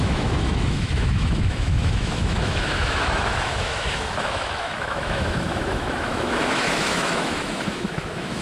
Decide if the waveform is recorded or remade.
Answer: remade